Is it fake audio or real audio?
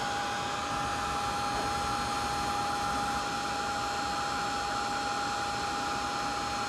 real